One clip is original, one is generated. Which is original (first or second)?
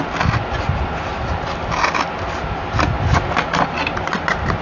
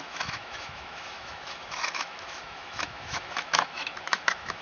first